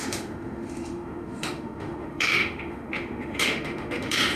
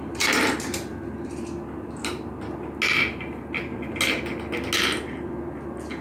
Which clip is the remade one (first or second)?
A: first